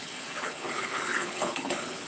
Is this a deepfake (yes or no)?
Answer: yes